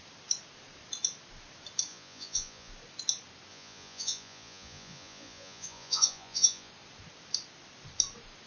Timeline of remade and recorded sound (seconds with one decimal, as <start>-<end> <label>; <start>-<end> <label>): 0.0-1.9 recorded; 1.9-2.7 remade; 2.7-3.5 recorded; 3.5-6.7 remade; 6.7-8.5 recorded